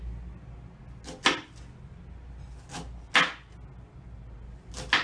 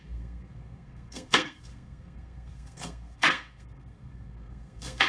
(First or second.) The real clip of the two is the first